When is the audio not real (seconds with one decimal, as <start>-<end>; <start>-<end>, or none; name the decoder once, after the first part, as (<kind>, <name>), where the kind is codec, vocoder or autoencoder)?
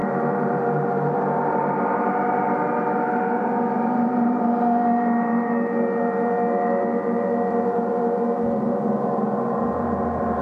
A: 0.0-10.4 (vocoder, BigVGAN v2)